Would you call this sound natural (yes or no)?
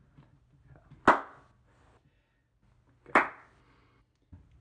yes